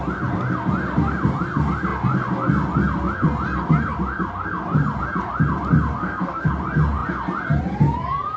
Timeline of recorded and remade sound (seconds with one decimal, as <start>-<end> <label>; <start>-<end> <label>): 0.0-6.0 recorded; 6.0-6.5 remade; 6.5-8.4 recorded